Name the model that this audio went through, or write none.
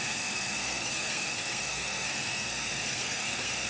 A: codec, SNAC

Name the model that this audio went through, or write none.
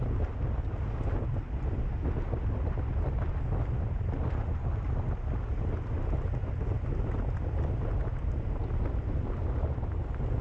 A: none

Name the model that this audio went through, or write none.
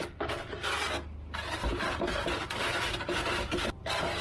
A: none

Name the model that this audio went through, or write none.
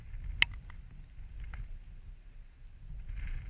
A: none